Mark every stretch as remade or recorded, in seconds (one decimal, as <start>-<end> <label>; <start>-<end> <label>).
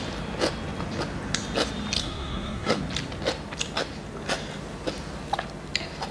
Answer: 0.0-2.0 recorded; 2.0-2.8 remade; 2.8-6.1 recorded